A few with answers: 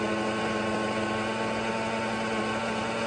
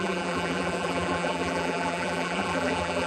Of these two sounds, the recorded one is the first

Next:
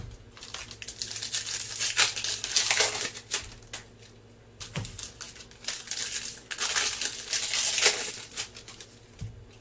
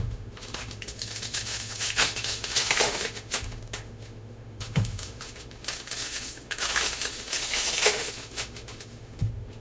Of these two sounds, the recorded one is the first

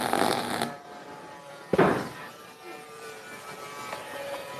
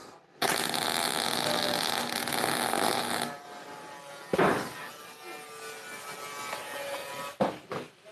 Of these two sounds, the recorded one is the second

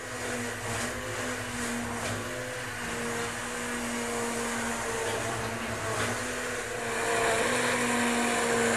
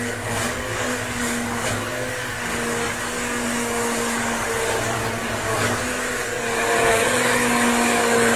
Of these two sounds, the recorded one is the first